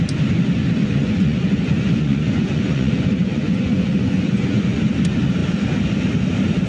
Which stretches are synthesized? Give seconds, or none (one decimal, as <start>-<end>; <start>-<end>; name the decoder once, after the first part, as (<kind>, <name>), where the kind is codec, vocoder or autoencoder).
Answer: 0.8-4.8 (vocoder, Vocos)